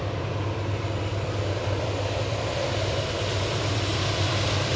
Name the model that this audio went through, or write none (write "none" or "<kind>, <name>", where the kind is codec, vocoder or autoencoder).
vocoder, BigVGAN v2